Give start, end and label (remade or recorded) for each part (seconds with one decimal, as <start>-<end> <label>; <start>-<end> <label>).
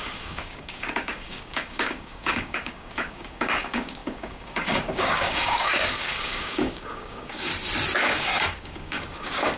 0.0-7.5 remade; 7.5-8.0 recorded; 8.0-9.6 remade